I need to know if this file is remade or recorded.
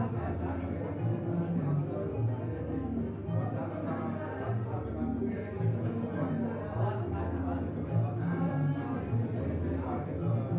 recorded